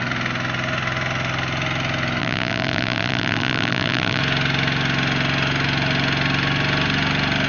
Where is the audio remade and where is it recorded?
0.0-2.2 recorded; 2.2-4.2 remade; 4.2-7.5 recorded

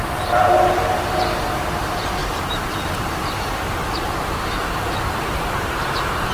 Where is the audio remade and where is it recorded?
0.0-2.2 recorded; 2.2-6.3 remade

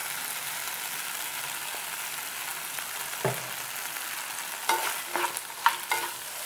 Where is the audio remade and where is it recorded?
0.0-6.5 recorded